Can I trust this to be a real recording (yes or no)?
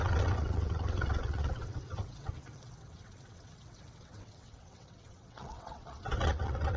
no